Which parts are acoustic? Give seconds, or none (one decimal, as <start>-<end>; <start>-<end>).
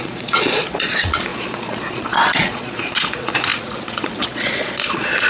none